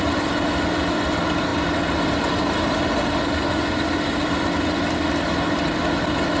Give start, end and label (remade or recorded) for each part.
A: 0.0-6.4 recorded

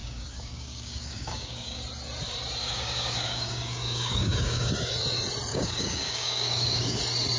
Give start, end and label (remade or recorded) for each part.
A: 0.0-1.8 remade; 1.8-2.6 recorded; 2.6-4.9 remade; 4.9-5.5 recorded; 5.5-7.0 remade; 7.0-7.4 recorded

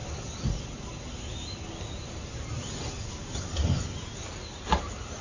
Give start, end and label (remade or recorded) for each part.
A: 0.0-5.2 recorded

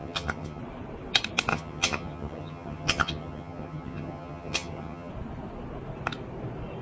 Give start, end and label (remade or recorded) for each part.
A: 0.0-0.6 remade; 0.6-1.5 recorded; 1.5-5.1 remade; 5.1-6.8 recorded